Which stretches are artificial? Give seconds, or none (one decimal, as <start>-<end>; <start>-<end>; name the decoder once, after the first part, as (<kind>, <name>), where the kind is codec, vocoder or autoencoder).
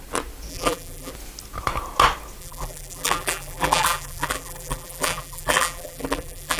0.5-1.1 (vocoder, BigVGAN v2); 2.4-6.6